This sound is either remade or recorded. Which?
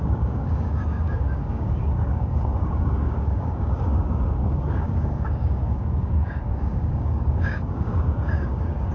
remade